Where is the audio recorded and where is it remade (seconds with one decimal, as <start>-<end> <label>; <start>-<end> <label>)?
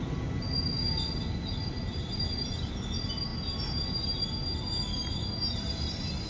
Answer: 0.0-6.3 recorded